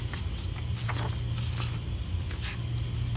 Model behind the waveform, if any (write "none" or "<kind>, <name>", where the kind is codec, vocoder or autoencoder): none